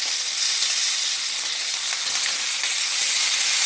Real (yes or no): yes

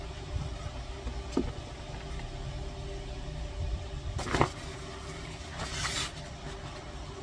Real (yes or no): yes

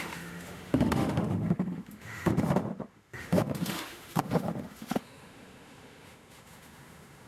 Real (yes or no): no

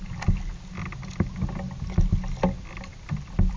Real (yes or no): yes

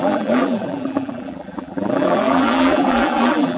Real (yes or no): no